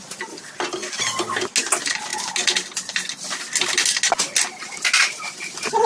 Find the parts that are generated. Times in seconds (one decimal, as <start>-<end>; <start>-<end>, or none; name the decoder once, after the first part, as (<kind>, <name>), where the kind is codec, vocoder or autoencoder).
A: none